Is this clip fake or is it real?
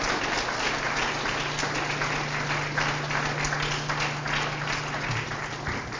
real